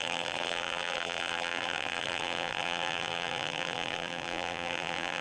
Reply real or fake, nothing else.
fake